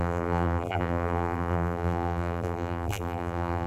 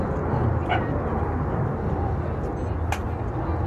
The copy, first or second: first